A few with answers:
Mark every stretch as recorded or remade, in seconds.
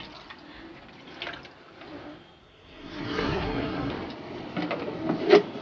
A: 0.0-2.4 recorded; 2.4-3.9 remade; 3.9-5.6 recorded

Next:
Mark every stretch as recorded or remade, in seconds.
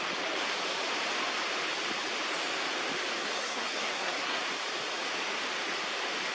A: 0.0-3.2 recorded; 3.2-4.4 remade; 4.4-6.3 recorded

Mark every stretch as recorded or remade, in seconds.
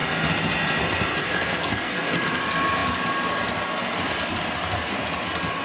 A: 0.0-1.2 recorded; 1.2-2.4 remade; 2.4-5.6 recorded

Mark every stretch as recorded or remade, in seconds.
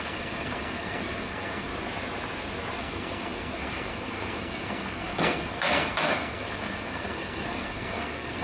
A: 0.0-1.7 remade; 1.7-2.8 recorded; 2.8-8.4 remade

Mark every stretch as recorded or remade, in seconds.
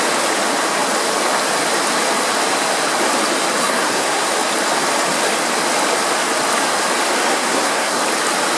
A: 0.0-3.6 recorded; 3.6-4.3 remade; 4.3-7.3 recorded; 7.3-8.0 remade; 8.0-8.6 recorded